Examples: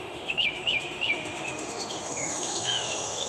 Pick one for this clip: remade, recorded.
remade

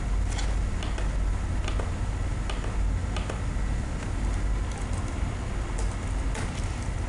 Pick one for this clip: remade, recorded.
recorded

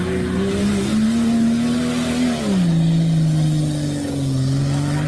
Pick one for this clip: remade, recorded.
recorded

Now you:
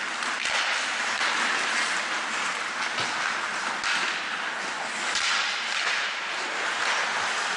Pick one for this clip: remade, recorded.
recorded